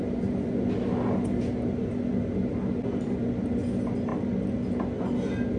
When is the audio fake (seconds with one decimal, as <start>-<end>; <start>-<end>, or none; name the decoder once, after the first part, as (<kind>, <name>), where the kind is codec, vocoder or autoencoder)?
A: none